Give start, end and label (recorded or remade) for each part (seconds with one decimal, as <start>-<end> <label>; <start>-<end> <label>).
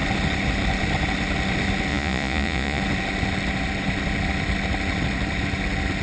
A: 0.0-1.9 recorded; 1.9-2.8 remade; 2.8-6.0 recorded